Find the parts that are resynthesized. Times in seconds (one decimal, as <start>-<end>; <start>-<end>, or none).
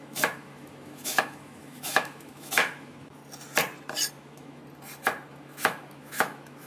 0.0-3.2; 4.1-4.6; 5.3-6.7